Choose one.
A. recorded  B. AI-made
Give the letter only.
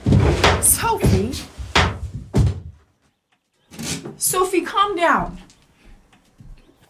A